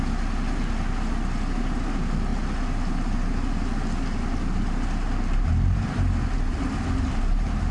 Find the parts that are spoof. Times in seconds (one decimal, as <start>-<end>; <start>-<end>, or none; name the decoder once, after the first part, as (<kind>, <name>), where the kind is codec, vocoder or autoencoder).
none